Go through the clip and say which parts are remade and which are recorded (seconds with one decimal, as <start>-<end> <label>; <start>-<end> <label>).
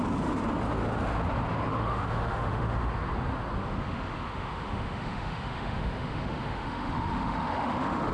0.0-1.7 recorded; 1.7-2.9 remade; 2.9-3.6 recorded; 3.6-8.1 remade